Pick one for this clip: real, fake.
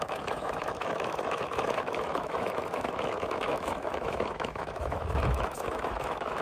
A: fake